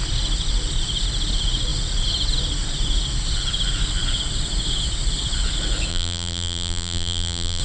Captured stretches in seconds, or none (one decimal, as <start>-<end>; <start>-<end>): 0.0-5.9